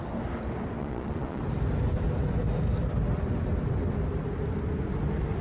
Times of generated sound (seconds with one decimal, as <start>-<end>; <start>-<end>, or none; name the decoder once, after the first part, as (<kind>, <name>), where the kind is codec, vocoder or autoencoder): 0.8-1.4 (vocoder, Vocos)